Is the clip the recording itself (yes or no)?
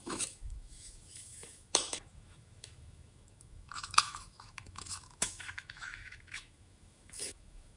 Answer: no